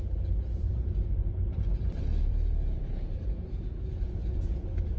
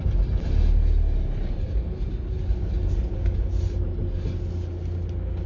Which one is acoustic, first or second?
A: second